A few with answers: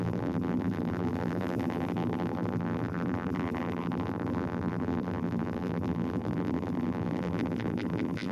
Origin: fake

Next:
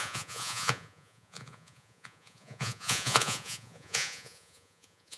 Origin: fake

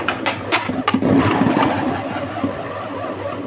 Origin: real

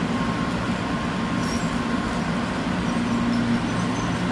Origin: real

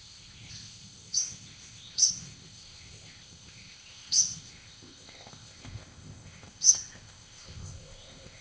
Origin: fake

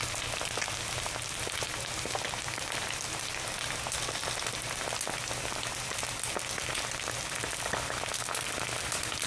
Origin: real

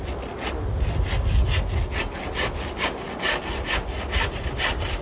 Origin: real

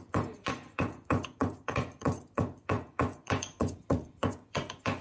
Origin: fake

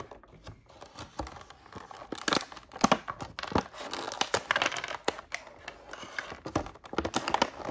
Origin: real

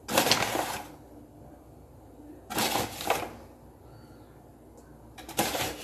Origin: real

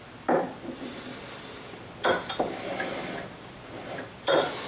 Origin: fake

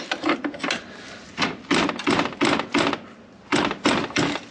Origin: real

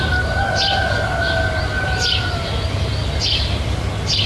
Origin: real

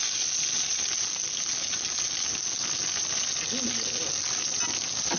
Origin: real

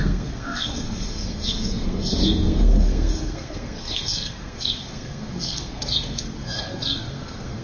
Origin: fake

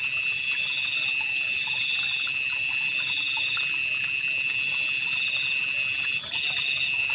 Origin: real